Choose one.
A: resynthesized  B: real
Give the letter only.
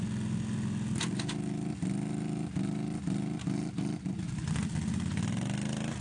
B